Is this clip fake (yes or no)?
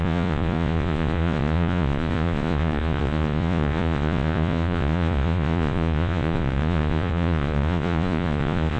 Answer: yes